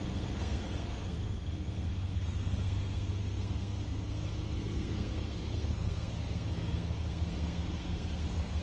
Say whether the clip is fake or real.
fake